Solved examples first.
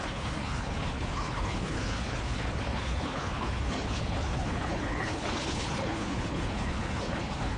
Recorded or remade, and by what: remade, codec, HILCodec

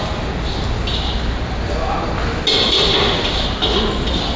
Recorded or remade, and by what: recorded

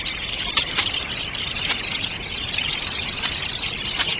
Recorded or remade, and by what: remade, vocoder, BigVGAN v2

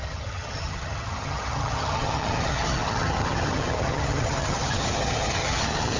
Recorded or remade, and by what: remade, vocoder, HiFi-GAN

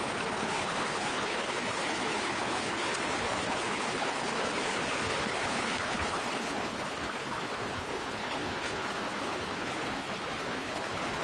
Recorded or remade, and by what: remade, codec, HILCodec